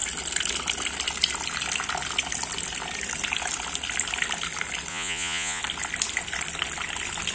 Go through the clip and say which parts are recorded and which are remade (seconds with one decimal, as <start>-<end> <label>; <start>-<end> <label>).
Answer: 0.0-4.9 recorded; 4.9-5.6 remade; 5.6-7.3 recorded